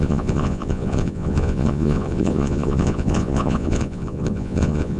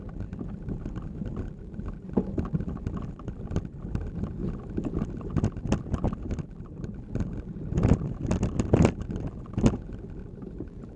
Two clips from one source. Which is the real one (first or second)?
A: second